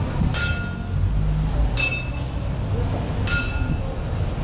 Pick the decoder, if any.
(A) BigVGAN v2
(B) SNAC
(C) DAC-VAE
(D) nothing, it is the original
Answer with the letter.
D